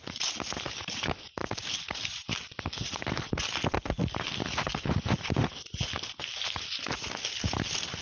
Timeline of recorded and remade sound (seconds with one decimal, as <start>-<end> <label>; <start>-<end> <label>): 0.0-8.0 recorded